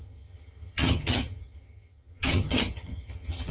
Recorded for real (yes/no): no